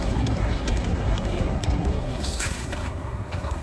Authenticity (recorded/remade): remade